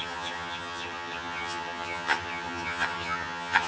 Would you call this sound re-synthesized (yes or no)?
yes